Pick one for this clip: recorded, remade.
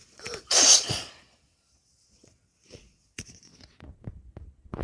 remade